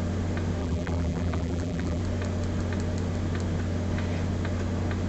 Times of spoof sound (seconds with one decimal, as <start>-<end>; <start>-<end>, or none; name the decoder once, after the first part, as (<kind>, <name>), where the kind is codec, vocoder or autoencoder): 0.6-2.0 (vocoder, BigVGAN v2)